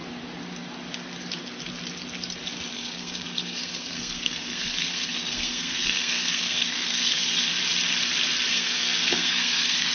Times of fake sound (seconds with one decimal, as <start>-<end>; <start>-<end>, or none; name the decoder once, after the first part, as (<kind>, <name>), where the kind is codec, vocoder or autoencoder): 2.7-7.5 (codec, SNAC); 8.5-9.9